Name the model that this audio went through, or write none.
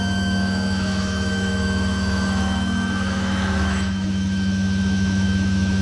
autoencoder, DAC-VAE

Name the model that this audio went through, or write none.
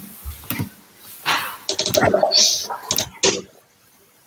none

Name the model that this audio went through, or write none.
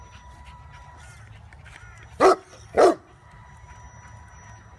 none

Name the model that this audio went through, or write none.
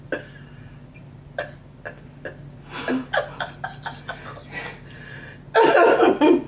none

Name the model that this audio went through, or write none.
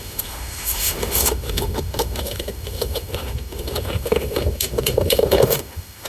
autoencoder, DAC-VAE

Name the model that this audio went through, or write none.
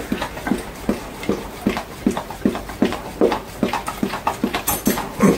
none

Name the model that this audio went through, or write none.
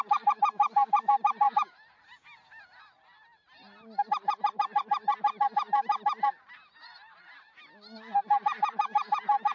none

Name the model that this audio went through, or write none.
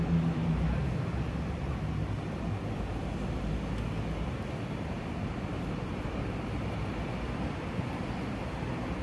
none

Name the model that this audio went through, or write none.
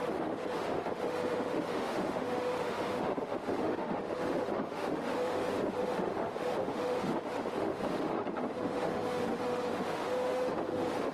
autoencoder, DAC-VAE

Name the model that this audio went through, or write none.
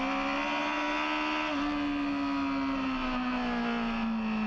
none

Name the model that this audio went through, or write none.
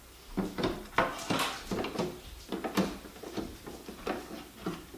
none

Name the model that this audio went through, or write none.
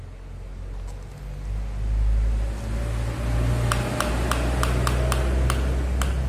none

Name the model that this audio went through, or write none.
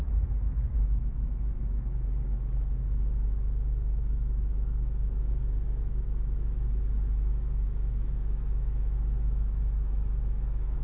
autoencoder, DAC-VAE